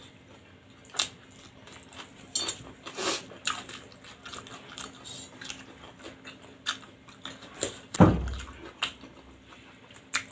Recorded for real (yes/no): yes